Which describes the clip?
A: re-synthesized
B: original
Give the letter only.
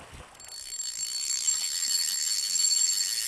B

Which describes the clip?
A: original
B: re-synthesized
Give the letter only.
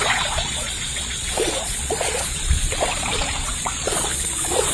B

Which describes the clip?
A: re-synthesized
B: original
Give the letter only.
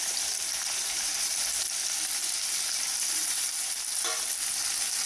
A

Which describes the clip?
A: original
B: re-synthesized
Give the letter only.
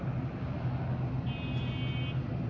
A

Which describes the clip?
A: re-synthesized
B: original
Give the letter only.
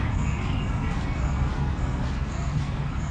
A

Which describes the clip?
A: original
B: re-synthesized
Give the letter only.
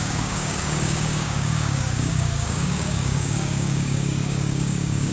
B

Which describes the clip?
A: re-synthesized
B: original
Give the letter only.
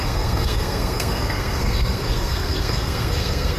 A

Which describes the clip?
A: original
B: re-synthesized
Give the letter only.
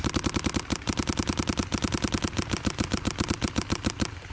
A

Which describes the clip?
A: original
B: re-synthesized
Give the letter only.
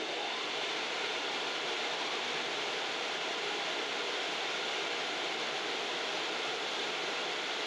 B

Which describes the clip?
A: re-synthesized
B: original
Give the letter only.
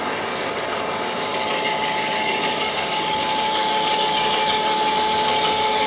A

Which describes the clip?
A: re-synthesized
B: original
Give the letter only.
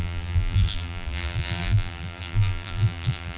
A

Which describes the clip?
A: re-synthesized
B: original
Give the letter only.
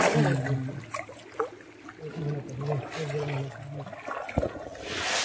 B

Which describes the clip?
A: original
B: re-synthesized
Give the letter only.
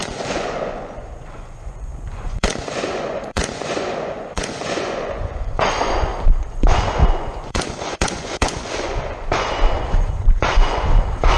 B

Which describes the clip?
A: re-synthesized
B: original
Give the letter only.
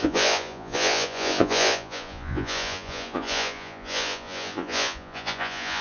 A